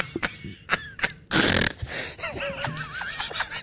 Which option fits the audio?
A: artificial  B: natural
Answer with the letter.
B